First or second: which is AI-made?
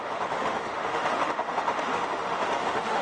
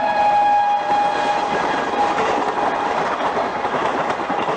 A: first